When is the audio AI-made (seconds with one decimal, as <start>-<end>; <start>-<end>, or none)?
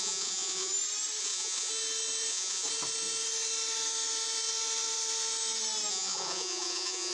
0.0-0.7; 1.2-1.7; 2.3-2.7; 5.9-7.1